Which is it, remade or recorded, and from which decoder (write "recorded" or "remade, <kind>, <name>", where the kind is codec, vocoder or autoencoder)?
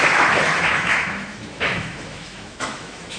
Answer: remade, autoencoder, DAC-VAE